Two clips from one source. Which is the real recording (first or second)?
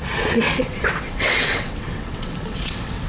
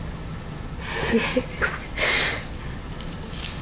second